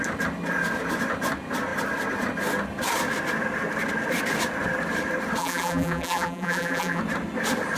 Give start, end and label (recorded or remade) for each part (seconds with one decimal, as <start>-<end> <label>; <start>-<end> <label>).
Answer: 0.0-5.4 recorded; 5.4-7.0 remade; 7.0-7.8 recorded